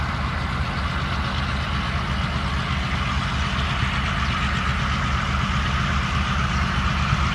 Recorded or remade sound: recorded